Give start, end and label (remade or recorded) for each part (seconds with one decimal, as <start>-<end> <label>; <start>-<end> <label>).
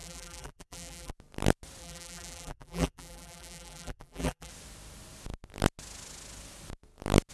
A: 0.0-1.1 remade; 1.1-1.8 recorded; 1.8-4.5 remade; 4.5-7.3 recorded